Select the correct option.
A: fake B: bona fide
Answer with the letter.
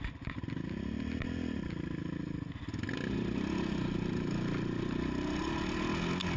B